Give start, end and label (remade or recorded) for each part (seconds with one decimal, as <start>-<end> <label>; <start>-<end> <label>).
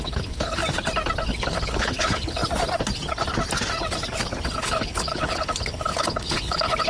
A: 0.0-0.6 remade; 0.6-1.3 recorded; 1.3-2.4 remade; 2.4-4.6 recorded; 4.6-6.9 remade